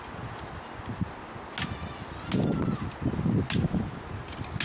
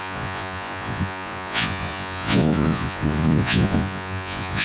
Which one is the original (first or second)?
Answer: first